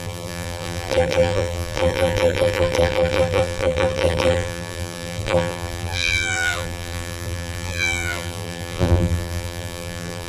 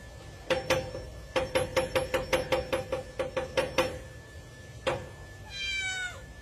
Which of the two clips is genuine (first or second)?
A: second